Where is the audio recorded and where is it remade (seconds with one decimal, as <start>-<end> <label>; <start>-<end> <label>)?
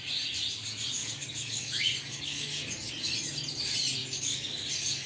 0.0-1.0 recorded; 1.0-2.9 remade; 2.9-4.0 recorded; 4.0-5.1 remade